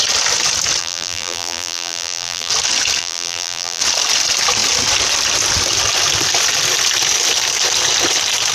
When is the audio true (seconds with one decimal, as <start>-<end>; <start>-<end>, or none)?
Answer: 0.0-0.8; 2.5-3.0; 3.8-8.5